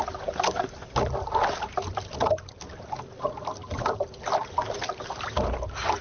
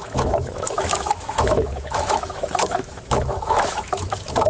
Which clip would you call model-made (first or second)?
second